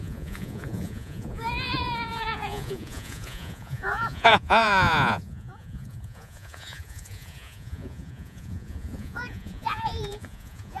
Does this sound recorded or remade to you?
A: remade